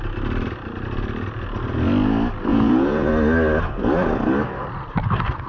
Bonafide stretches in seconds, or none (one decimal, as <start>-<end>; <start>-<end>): 0.0-2.5; 3.1-5.5